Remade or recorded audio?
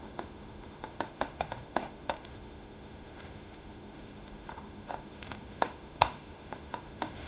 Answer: remade